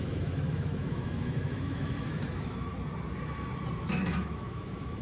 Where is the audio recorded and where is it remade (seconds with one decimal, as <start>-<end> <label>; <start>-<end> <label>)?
0.0-2.7 remade; 2.7-3.8 recorded; 3.8-5.0 remade